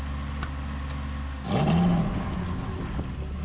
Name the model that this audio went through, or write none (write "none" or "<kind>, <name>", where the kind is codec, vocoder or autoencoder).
none